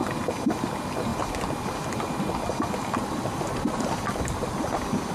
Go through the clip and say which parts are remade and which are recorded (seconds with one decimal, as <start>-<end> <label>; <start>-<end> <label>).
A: 0.0-5.1 recorded